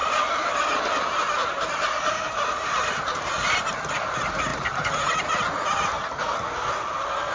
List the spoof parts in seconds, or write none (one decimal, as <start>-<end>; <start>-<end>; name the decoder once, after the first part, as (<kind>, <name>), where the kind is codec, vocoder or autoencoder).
0.0-0.8 (vocoder, BigVGAN v2); 1.4-3.3; 4.5-5.2